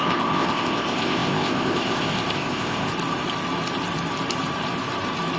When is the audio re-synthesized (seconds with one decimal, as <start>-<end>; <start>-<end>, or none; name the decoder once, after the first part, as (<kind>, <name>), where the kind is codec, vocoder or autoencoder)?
0.0-2.9 (codec, ZipCodec)